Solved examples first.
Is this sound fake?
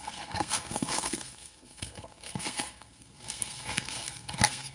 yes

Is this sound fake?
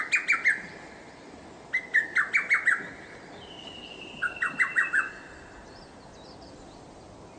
no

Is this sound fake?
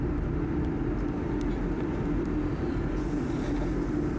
yes